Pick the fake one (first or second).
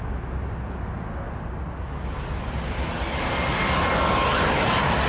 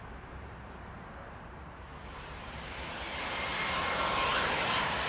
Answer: second